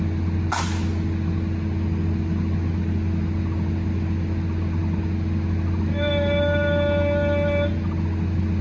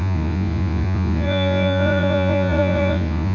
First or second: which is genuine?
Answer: first